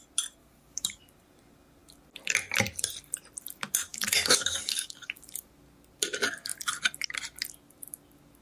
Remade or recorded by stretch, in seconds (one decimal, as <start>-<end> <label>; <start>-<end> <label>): 0.0-0.4 recorded; 0.4-1.0 remade; 1.0-3.9 recorded; 3.9-5.5 remade; 5.5-8.4 recorded